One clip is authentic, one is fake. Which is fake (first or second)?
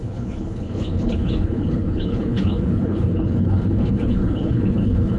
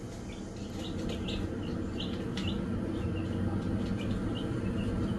first